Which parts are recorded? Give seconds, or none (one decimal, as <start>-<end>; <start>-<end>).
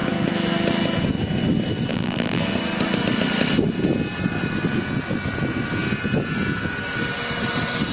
0.0-1.9; 2.4-7.9